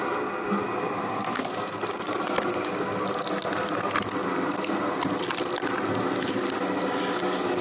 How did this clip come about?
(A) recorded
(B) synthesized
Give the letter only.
A